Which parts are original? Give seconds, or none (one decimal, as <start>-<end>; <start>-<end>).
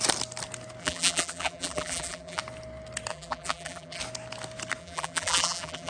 0.0-0.8; 2.4-3.1; 4.0-4.8